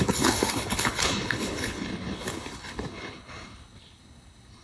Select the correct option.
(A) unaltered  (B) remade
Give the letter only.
B